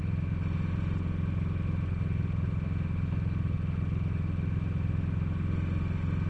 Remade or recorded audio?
recorded